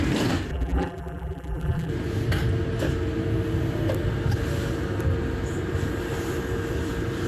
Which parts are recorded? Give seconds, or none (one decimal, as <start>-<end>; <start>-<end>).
0.0-0.5; 1.9-7.3